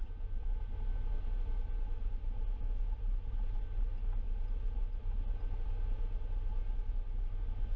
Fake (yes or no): no